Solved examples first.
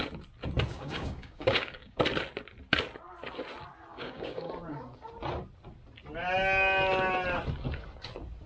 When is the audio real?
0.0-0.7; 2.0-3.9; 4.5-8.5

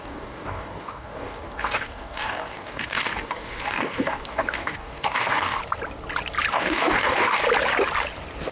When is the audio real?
5.6-6.5; 7.4-8.5

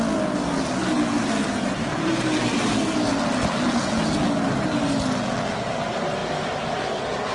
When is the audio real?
0.0-7.3

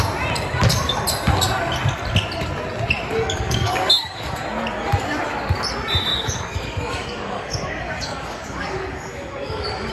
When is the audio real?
0.0-3.1; 4.4-6.1

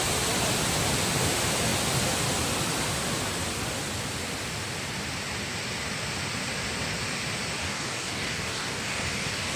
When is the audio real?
0.0-7.6